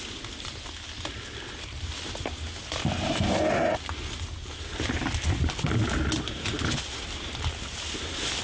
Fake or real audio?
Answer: real